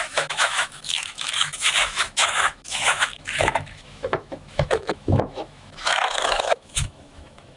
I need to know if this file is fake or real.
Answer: fake